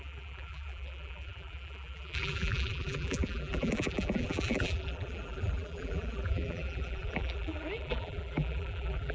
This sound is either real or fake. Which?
fake